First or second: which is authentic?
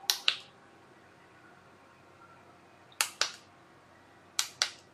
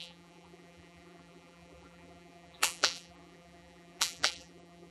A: first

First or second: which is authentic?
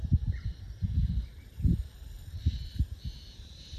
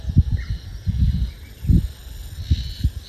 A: second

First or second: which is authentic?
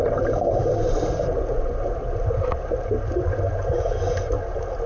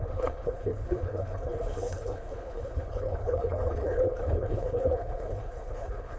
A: first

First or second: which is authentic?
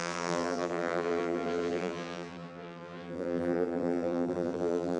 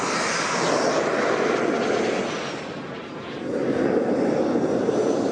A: second